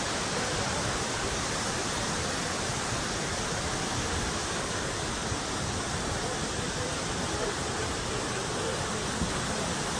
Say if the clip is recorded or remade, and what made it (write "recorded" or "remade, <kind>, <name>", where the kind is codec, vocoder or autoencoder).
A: recorded